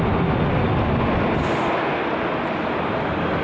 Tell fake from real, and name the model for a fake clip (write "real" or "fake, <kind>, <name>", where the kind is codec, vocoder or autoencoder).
real